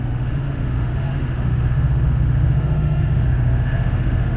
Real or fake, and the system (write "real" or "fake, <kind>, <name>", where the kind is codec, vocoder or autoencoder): fake, autoencoder, DAC-VAE